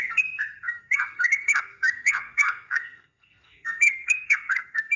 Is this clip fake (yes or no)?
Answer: yes